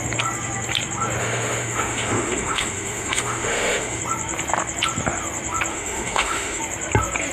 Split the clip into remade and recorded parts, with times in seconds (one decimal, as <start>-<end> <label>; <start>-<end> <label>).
0.0-1.2 recorded; 1.2-4.0 remade; 4.0-5.7 recorded; 5.7-6.6 remade; 6.6-7.3 recorded